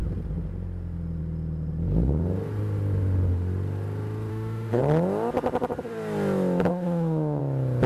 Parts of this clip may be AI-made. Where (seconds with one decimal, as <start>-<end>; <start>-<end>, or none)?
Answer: 4.3-4.8; 6.7-7.4